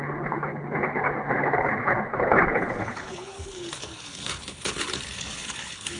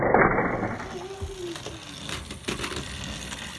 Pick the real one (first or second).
second